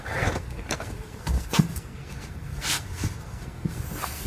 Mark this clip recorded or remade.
remade